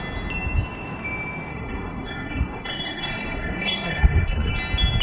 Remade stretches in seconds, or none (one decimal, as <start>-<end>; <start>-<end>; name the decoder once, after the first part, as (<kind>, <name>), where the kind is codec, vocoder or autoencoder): 1.5-4.5 (codec, SNAC)